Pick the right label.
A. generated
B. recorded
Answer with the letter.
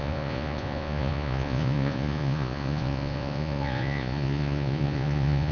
A